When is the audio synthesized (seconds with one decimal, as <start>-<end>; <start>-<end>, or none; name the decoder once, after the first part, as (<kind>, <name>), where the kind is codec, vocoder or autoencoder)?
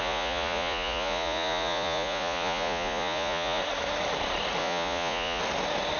0.0-3.6 (vocoder, Vocos); 4.6-5.4